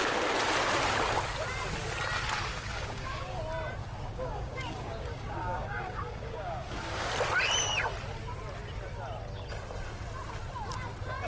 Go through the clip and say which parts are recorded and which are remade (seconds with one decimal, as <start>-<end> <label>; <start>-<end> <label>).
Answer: 0.0-2.5 recorded; 2.5-3.4 remade; 3.4-3.8 recorded; 3.8-7.1 remade; 7.1-11.3 recorded